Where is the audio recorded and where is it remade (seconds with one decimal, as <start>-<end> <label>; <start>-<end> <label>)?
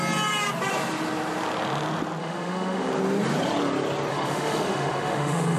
0.0-2.2 recorded; 2.2-2.9 remade; 2.9-4.1 recorded; 4.1-5.6 remade